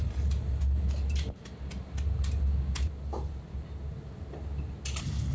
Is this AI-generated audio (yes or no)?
no